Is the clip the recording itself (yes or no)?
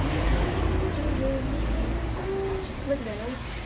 yes